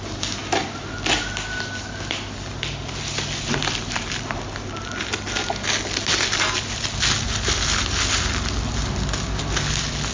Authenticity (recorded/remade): recorded